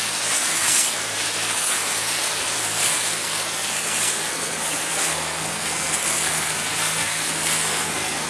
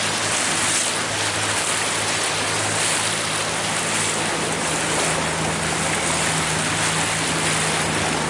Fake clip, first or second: first